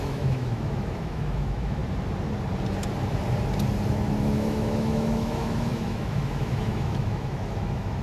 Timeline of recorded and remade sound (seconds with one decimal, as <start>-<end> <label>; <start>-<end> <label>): 0.0-1.8 remade; 1.8-4.2 recorded; 4.2-8.0 remade